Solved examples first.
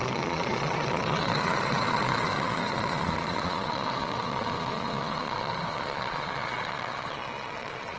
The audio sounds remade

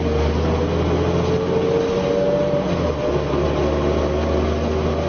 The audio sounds recorded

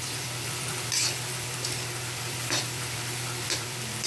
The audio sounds remade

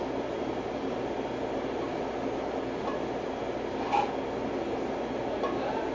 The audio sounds recorded